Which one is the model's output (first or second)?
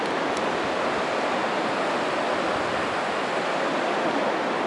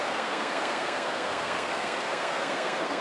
second